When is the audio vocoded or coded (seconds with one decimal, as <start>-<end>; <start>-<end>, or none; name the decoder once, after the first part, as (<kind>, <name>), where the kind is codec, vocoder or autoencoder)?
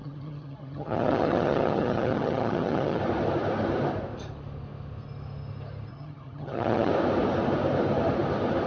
0.0-3.0 (vocoder, HiFi-GAN); 5.9-6.9